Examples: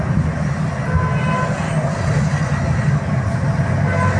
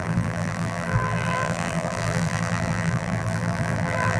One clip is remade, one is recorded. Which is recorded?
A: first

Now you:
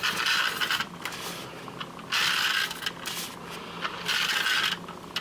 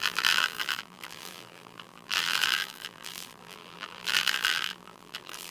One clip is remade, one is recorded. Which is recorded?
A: first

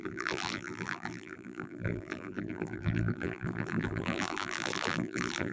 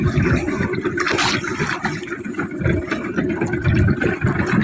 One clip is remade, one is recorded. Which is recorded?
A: second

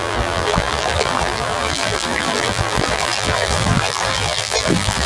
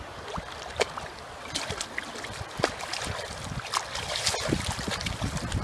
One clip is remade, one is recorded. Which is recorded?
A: second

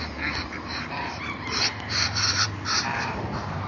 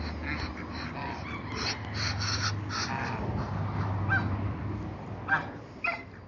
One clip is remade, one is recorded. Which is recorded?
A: second